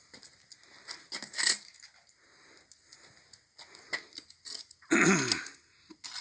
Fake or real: real